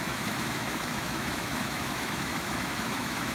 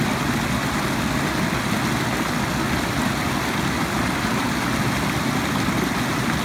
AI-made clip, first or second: first